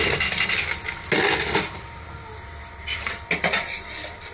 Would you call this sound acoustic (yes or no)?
yes